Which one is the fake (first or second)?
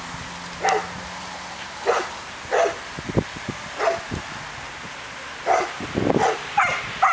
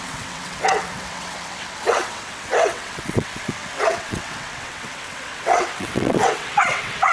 second